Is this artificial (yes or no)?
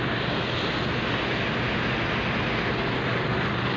no